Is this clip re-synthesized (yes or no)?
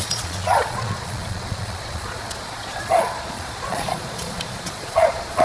yes